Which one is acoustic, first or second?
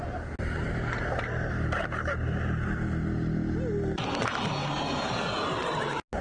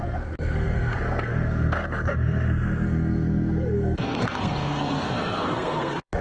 first